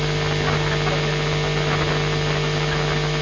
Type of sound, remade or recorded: recorded